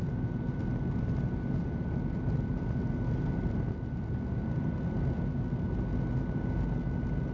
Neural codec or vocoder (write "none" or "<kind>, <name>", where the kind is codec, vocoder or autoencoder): none